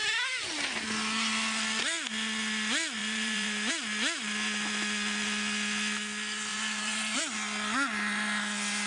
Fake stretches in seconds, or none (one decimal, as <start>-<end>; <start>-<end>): 3.0-3.7; 6.5-7.2